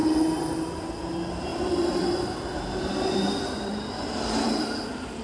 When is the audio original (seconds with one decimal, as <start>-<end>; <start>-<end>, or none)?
0.0-1.5; 4.6-5.2